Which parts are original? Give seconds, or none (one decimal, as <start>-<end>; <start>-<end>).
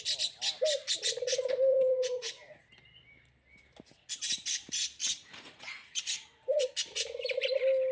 0.0-1.7; 2.6-5.0; 6.7-7.9